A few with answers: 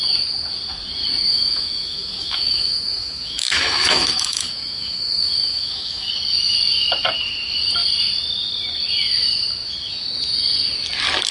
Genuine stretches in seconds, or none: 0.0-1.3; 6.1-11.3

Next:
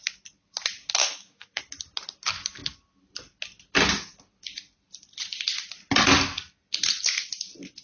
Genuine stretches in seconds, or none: 0.0-1.0; 1.6-7.8